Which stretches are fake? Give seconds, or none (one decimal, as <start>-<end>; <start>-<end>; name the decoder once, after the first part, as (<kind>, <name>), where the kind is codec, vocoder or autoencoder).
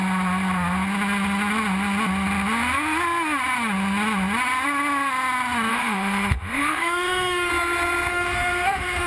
5.7-7.5 (autoencoder, DAC-VAE); 8.1-9.1